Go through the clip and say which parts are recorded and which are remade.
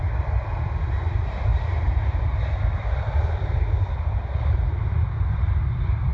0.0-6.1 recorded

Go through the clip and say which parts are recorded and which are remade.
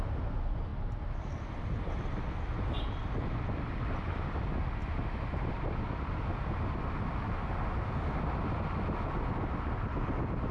0.0-10.5 recorded